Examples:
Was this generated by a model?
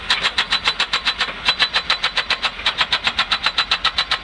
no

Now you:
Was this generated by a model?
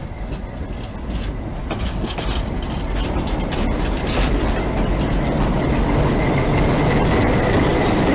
no